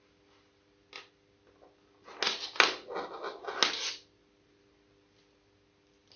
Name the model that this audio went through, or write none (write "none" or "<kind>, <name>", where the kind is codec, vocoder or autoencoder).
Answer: none